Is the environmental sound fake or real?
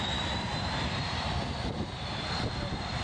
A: fake